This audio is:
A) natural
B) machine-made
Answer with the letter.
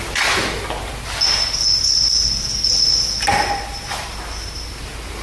A